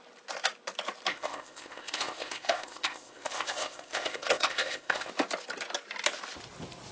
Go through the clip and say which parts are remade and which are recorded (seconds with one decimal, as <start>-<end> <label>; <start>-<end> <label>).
0.0-1.1 recorded; 1.1-5.1 remade; 5.1-6.9 recorded